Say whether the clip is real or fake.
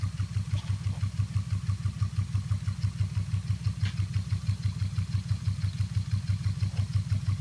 real